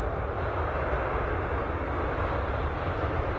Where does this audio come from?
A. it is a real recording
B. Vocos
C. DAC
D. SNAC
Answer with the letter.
A